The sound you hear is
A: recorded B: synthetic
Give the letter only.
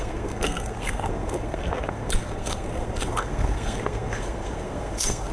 B